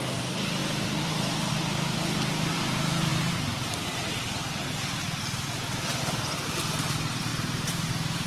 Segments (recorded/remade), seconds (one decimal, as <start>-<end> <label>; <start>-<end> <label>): 0.0-3.1 remade; 3.1-6.0 recorded; 6.0-8.3 remade